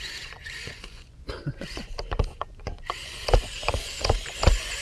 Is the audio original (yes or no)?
no